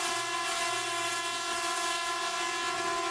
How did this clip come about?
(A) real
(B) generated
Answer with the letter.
A